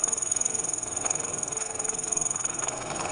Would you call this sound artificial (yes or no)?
yes